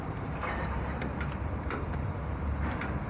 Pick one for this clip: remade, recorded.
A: remade